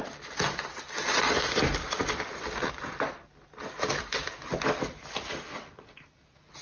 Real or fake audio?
real